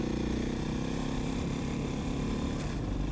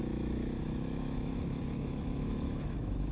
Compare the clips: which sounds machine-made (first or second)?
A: second